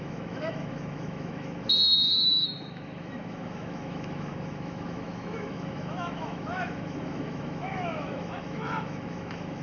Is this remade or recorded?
remade